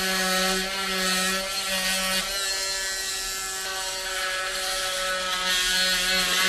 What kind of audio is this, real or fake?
real